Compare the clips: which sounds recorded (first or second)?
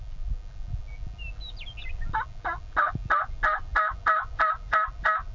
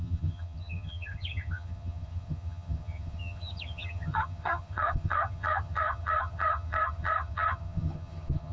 first